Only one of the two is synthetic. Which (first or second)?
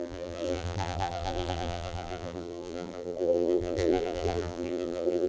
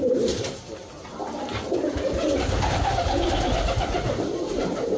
first